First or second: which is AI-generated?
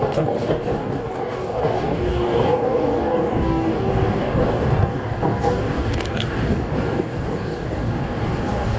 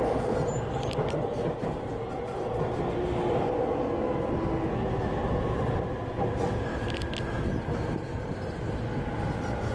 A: first